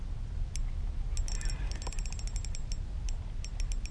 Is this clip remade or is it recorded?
recorded